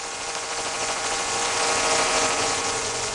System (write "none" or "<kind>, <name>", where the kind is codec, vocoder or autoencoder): vocoder, Vocos